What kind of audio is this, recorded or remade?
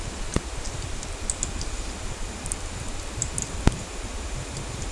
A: recorded